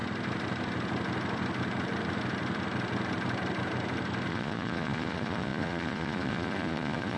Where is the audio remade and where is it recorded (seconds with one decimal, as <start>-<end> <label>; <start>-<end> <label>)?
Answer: 0.0-4.3 recorded; 4.3-7.2 remade